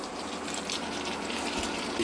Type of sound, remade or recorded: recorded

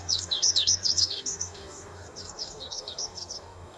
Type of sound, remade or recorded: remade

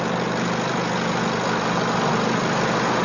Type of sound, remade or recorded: recorded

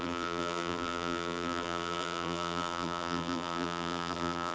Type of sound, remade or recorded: remade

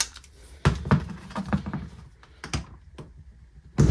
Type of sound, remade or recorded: recorded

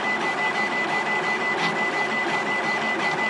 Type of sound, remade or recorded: recorded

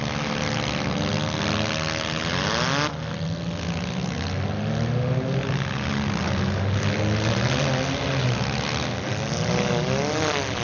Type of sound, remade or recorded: recorded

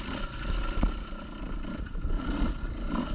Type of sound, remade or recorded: remade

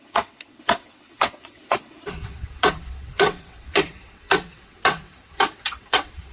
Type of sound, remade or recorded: remade